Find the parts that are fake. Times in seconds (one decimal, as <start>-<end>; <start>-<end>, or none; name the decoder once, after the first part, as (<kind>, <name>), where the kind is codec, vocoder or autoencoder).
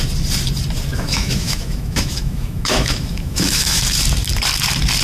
0.9-3.8 (autoencoder, DAC-VAE)